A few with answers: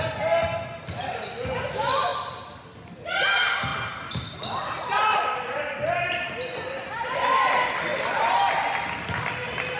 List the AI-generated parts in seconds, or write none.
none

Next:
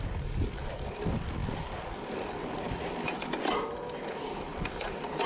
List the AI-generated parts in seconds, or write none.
none